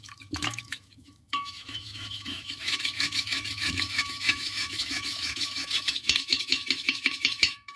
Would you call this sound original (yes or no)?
no